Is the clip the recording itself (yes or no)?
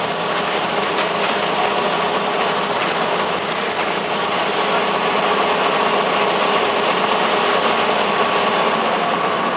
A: yes